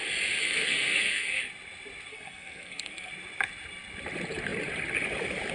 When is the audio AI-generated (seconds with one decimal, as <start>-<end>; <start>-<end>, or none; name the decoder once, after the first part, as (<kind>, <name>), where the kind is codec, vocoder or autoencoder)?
0.4-1.4 (codec, SNAC); 2.1-3.1